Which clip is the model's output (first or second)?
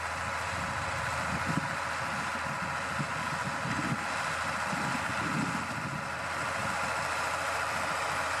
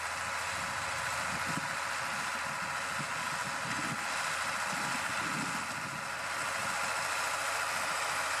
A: first